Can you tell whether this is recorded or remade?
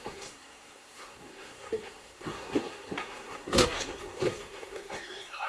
remade